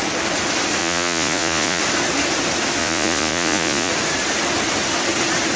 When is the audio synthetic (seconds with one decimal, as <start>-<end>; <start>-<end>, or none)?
0.8-1.8; 2.8-3.9